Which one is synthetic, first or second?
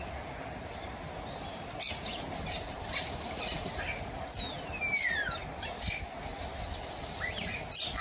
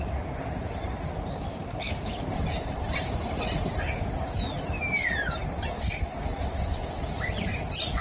second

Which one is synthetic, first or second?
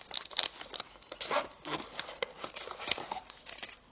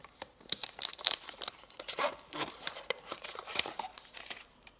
second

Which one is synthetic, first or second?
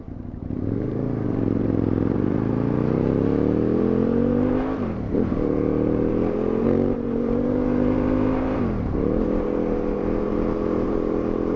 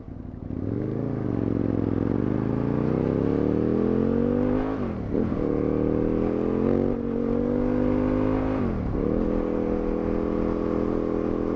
first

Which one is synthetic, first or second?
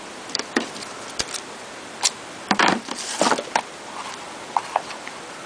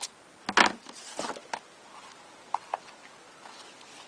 first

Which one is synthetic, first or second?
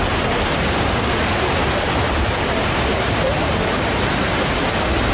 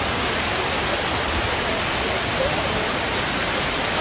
first